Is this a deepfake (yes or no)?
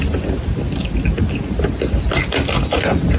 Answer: no